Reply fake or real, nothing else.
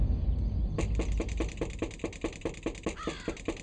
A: real